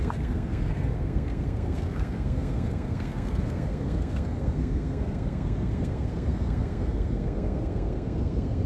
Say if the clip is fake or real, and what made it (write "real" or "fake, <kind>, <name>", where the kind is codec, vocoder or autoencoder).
fake, codec, SNAC